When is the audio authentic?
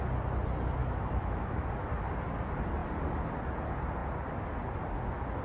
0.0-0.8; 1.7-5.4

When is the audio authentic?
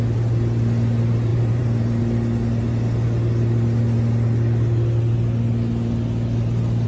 0.0-1.3; 2.0-6.9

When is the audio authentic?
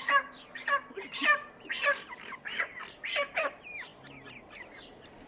none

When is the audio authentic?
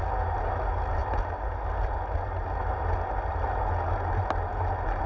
0.0-5.1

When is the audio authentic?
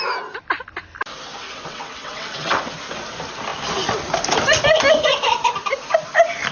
0.0-1.4; 2.6-6.5